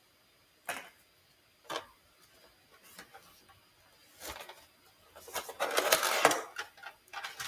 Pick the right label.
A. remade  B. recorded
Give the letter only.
B